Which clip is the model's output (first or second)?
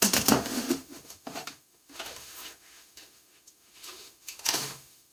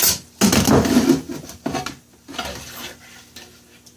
first